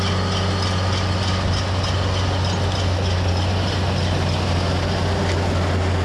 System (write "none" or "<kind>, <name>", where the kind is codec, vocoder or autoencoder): none